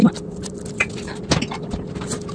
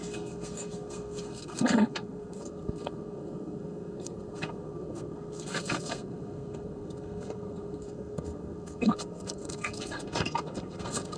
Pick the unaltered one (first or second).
first